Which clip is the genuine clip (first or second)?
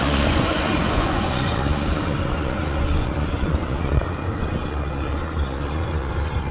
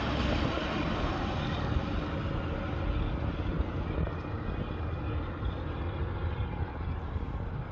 second